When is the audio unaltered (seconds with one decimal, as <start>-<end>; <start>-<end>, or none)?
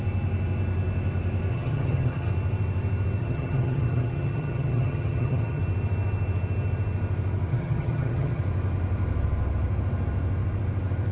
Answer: 0.0-1.5; 2.3-3.2; 5.6-7.5; 8.4-11.1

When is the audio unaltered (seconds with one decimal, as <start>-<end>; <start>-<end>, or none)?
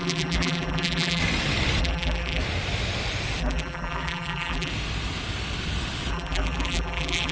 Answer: 1.2-1.8; 2.4-3.4; 4.7-6.1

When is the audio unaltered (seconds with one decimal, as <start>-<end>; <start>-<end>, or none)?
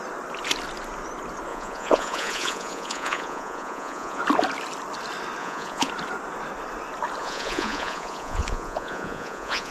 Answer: 0.0-1.5; 4.2-5.4; 5.9-7.2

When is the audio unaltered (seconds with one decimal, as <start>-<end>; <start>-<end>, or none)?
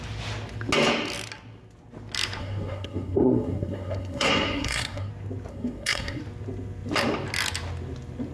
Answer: 0.0-2.4; 5.1-5.5; 6.2-8.3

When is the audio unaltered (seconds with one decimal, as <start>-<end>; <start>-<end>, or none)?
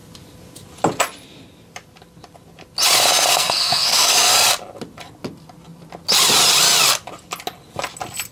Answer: 0.0-3.3; 4.3-8.3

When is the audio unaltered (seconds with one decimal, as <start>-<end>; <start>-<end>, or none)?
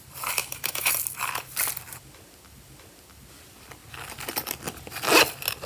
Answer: 0.0-0.4; 0.9-5.7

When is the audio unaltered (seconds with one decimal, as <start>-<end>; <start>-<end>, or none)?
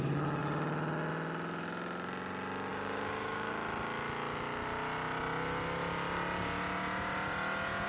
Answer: 0.0-2.7; 3.5-7.9